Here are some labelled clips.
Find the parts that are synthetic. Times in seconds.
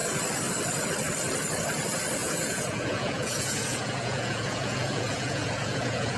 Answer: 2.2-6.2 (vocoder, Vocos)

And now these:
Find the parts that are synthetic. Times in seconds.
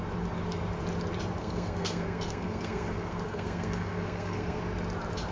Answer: 1.4-4.6 (codec, SNAC)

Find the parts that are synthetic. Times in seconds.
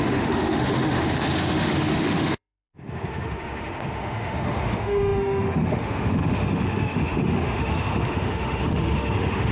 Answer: 0.0-9.5 (autoencoder, DAC-VAE)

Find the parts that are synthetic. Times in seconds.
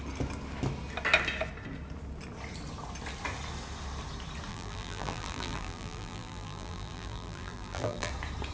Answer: 4.5-8.1 (vocoder, BigVGAN v2)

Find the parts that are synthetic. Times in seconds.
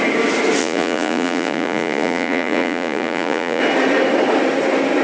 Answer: 0.6-3.6 (vocoder, Vocos)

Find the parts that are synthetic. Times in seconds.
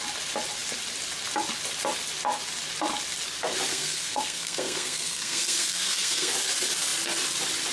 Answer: 3.7-6.3 (codec, SNAC)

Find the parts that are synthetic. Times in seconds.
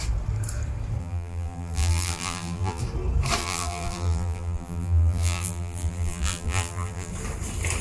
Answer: 1.0-2.8 (vocoder, BigVGAN v2); 3.4-7.1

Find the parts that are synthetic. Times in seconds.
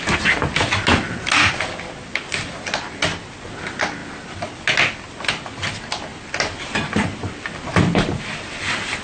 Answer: none